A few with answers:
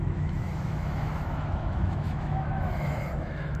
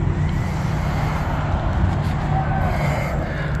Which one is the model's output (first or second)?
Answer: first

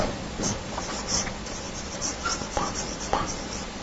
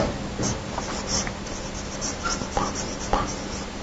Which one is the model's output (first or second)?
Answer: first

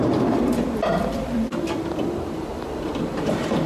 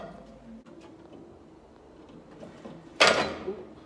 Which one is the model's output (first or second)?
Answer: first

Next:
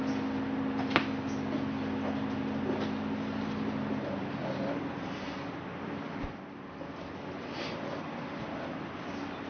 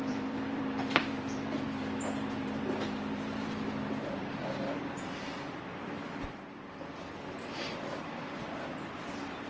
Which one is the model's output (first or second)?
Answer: second